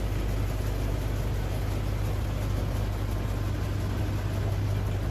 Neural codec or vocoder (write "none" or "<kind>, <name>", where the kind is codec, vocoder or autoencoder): none